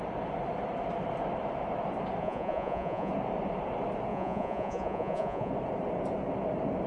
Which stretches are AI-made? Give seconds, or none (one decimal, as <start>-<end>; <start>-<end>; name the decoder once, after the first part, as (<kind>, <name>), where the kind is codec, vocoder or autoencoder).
2.2-3.1 (vocoder, Vocos); 4.1-5.5